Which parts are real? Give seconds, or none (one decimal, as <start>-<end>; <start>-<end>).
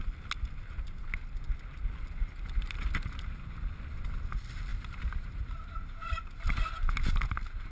0.0-7.7